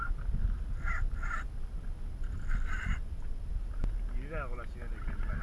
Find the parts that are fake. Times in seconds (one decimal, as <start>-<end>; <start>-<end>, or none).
none